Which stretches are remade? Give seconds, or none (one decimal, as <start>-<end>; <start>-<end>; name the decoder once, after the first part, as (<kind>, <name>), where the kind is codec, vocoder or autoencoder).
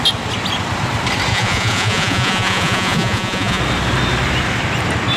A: 1.3-3.6 (vocoder, Vocos)